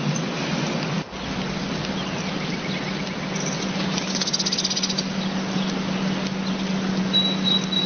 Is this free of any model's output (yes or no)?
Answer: yes